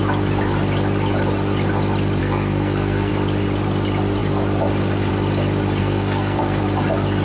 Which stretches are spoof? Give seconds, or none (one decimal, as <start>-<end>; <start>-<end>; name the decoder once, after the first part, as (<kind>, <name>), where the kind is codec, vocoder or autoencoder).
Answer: 2.2-3.1 (codec, SNAC); 5.8-6.6

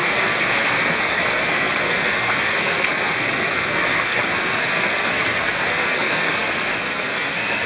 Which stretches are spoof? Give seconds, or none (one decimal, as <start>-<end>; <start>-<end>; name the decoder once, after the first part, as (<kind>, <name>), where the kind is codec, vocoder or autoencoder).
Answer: 0.0-7.7 (codec, SNAC)

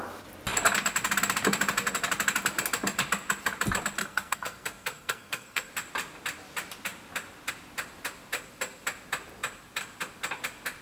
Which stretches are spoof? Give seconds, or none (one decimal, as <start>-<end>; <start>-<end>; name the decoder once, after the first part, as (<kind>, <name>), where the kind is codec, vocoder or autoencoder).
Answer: 4.0-5.7 (codec, SNAC)

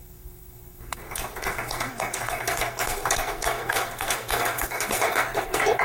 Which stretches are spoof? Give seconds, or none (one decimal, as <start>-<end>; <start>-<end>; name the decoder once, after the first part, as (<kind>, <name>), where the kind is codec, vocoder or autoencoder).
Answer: 0.0-5.8 (codec, SNAC)